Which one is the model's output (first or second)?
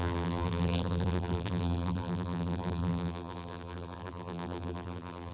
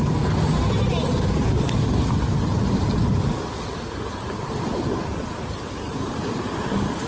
first